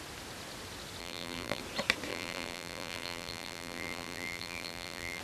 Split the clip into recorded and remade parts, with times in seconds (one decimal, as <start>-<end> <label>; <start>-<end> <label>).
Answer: 0.0-1.0 recorded; 1.0-1.6 remade; 1.6-2.1 recorded; 2.1-5.2 remade